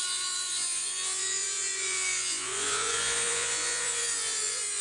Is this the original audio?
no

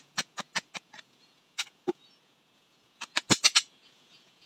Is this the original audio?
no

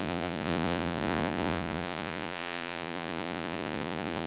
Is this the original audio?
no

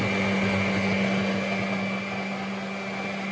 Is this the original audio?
yes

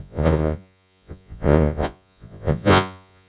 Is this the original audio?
no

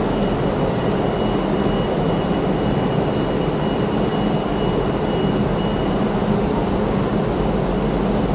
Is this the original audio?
yes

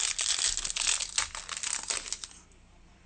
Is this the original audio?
yes